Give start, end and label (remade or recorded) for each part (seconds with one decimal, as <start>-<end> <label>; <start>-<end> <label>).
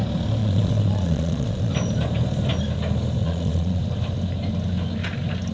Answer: 0.0-0.4 recorded; 0.4-1.7 remade; 1.7-3.2 recorded; 3.2-3.8 remade; 3.8-5.5 recorded